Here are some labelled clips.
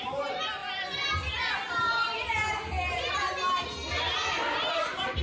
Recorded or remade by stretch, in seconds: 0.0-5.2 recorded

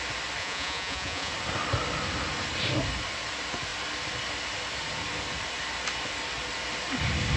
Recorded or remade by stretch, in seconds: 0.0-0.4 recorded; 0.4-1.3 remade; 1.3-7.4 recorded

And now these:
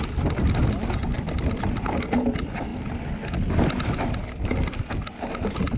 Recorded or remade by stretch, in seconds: 0.0-5.8 recorded